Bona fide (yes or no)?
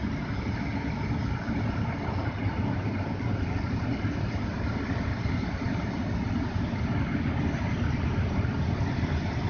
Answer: yes